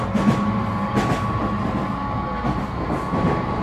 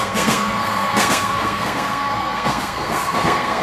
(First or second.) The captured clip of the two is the first